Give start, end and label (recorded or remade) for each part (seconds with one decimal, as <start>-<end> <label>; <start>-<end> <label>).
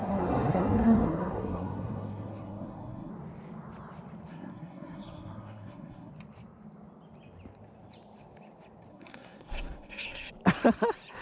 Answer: 0.0-3.1 remade; 3.1-4.3 recorded; 4.3-6.1 remade; 6.1-8.9 recorded; 8.9-10.3 remade; 10.3-11.2 recorded